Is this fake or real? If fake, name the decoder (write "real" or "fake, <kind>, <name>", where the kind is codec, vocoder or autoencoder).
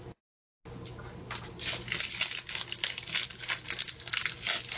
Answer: real